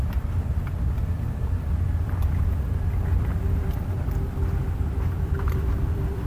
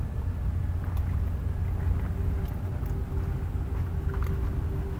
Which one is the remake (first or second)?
first